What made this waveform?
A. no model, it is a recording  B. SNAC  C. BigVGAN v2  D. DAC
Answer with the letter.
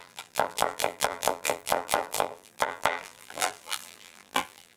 C